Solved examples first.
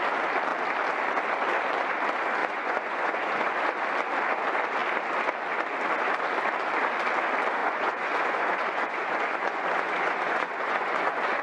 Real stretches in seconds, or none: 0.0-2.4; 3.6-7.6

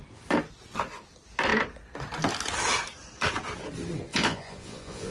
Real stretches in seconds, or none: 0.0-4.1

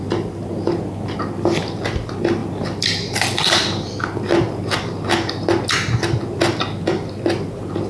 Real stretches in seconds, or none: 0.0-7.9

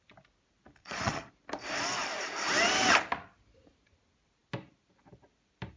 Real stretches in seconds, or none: 0.0-0.8; 1.3-5.8